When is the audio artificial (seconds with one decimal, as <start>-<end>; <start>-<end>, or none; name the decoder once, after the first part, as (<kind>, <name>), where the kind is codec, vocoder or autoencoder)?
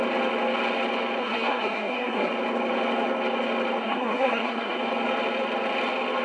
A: 1.2-2.3 (codec, SNAC); 3.8-4.8